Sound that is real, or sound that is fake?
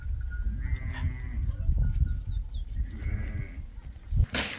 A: real